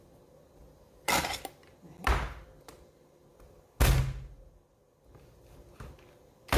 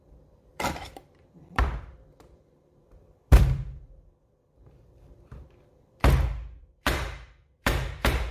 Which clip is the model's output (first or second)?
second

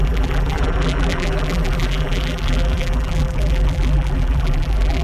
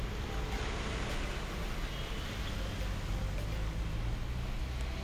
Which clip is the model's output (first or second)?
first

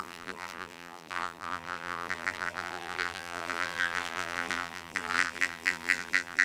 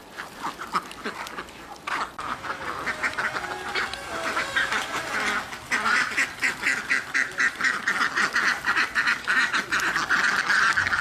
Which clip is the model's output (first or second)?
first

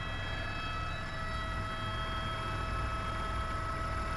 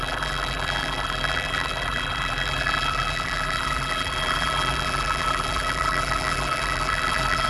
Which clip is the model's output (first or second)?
second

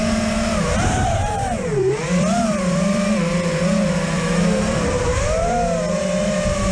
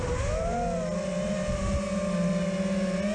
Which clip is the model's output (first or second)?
first